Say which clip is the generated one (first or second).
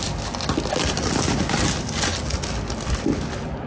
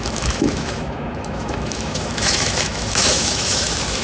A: second